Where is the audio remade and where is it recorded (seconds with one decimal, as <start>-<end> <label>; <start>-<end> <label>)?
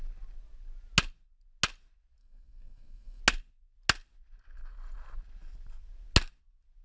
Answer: 0.0-2.2 recorded; 2.2-3.2 remade; 3.2-6.8 recorded